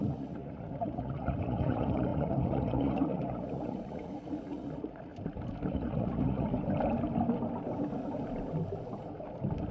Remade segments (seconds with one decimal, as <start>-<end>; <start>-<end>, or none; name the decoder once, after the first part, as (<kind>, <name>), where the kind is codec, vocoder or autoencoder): 0.0-5.1 (vocoder, Vocos); 5.7-6.5